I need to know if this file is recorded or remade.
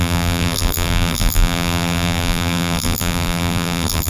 remade